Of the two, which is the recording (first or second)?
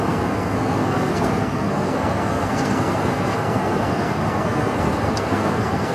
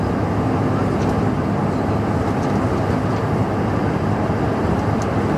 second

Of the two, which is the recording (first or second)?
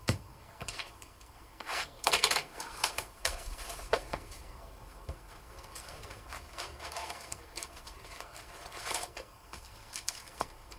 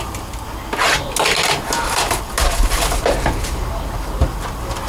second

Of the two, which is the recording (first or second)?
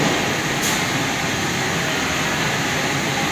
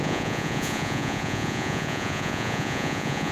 first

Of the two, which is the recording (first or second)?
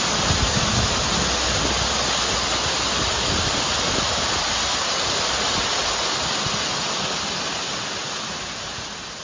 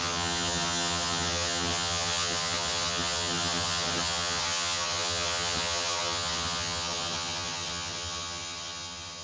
first